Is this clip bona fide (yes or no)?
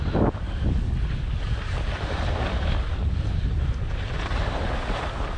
yes